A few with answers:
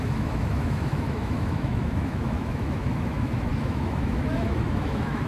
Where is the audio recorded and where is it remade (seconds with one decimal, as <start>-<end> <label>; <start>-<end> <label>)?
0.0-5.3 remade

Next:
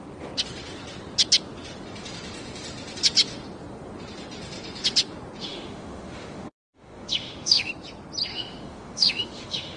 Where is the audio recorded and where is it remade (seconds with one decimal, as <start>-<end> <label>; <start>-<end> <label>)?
0.0-5.4 recorded; 5.4-7.7 remade; 7.7-8.3 recorded; 8.3-9.8 remade

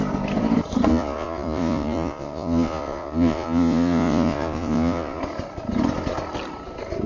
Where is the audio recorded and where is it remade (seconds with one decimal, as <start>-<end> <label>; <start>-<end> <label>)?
0.0-0.9 recorded; 0.9-5.2 remade; 5.2-7.1 recorded

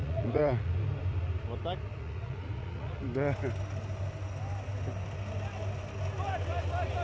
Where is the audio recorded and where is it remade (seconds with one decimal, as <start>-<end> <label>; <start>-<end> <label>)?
0.0-0.7 remade; 0.7-1.9 recorded; 1.9-3.0 remade; 3.0-7.0 recorded

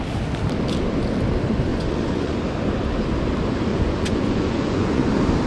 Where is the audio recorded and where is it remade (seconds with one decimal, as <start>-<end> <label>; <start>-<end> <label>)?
0.0-1.7 recorded; 1.7-2.4 remade; 2.4-3.7 recorded; 3.7-5.1 remade; 5.1-5.5 recorded

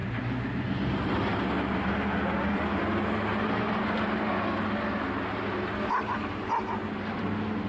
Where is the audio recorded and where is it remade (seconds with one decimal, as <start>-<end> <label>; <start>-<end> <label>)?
0.0-7.7 recorded

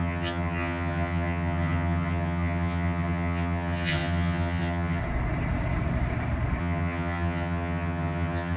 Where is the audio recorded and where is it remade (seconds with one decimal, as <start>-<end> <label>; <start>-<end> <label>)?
0.0-5.0 remade; 5.0-6.6 recorded; 6.6-8.6 remade

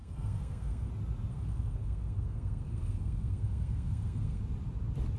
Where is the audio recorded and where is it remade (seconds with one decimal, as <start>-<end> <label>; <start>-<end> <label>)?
0.0-0.9 remade; 0.9-1.3 recorded; 1.3-4.4 remade; 4.4-5.2 recorded